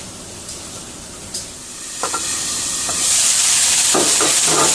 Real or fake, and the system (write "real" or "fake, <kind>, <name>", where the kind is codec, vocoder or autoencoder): fake, vocoder, BigVGAN v2